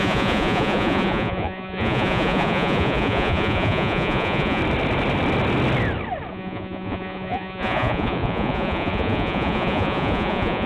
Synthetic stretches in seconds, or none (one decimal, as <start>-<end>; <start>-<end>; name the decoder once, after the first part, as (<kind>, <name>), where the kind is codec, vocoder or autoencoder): 0.0-4.6 (vocoder, Vocos); 6.3-10.7